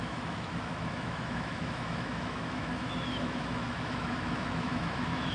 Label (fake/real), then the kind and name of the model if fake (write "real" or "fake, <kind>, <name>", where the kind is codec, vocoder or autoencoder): fake, autoencoder, DAC-VAE